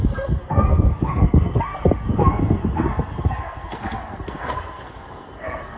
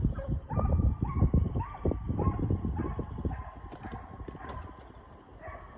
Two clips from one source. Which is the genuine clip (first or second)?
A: second